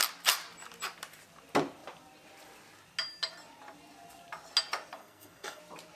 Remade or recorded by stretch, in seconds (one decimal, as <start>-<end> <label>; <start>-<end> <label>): 0.0-5.0 recorded; 5.0-5.6 remade; 5.6-6.0 recorded